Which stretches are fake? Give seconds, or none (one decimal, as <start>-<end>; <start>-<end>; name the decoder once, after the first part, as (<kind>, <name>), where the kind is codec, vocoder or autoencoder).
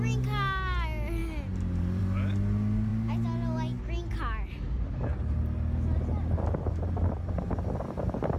none